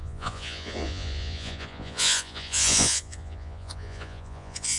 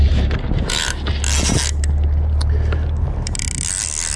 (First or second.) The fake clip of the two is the first